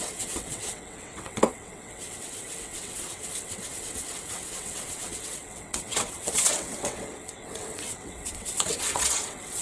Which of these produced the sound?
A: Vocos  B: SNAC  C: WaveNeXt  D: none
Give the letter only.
C